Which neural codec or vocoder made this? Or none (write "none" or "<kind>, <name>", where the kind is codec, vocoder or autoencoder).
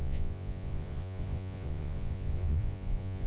vocoder, Vocos